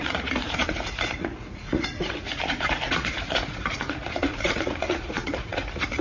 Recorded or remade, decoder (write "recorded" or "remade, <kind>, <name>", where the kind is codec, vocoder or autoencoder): remade, vocoder, Vocos